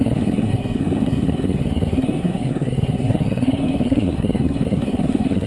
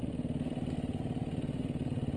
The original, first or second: second